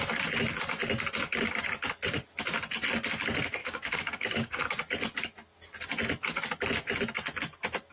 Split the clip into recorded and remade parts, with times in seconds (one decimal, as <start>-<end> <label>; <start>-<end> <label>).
0.0-3.6 recorded; 3.6-4.6 remade; 4.6-7.9 recorded